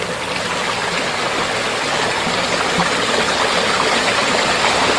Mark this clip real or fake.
real